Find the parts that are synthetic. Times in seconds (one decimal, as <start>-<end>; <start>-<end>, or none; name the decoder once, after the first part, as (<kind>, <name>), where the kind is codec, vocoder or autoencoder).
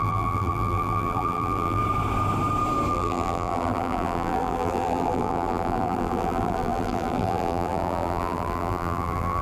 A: 0.0-1.8 (vocoder, BigVGAN v2); 2.9-9.4